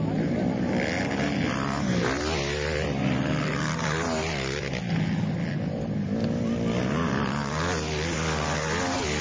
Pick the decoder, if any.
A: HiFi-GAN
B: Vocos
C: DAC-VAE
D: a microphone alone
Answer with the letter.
D